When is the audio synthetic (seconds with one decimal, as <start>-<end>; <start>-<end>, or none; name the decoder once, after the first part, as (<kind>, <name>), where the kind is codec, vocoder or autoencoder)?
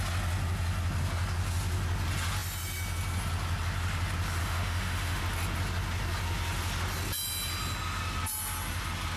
4.4-5.2 (autoencoder, DAC-VAE)